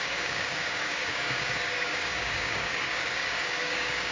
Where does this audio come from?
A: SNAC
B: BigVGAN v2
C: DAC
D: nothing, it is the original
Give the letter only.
C